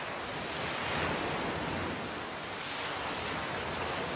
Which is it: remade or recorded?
recorded